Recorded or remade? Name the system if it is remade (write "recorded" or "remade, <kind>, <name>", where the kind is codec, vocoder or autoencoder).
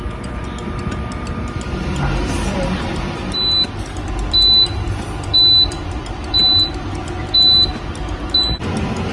recorded